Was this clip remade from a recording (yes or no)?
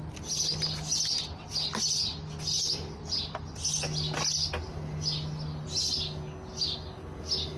no